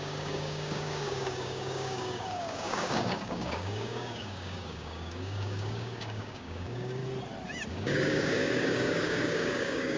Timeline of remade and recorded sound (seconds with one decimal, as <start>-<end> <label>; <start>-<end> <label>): 0.0-7.0 remade; 7.0-7.7 recorded; 7.7-10.0 remade